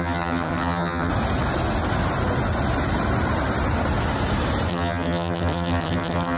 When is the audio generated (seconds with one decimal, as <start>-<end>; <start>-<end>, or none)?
0.0-1.1; 4.7-6.4